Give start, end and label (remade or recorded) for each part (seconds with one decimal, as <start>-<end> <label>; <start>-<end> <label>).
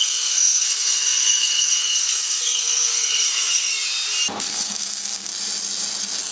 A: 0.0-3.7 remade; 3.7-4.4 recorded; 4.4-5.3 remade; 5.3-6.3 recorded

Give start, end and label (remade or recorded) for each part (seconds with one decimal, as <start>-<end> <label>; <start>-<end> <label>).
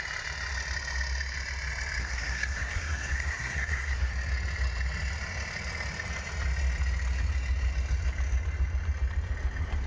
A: 0.0-2.0 recorded; 2.0-4.1 remade; 4.1-9.9 recorded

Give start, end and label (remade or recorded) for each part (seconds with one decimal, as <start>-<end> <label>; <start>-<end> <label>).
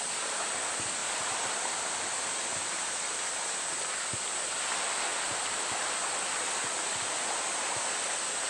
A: 0.0-8.5 recorded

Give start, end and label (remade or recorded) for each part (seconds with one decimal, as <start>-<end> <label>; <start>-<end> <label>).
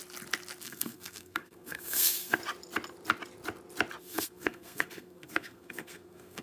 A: 0.0-0.6 recorded; 0.6-2.4 remade; 2.4-4.0 recorded; 4.0-6.4 remade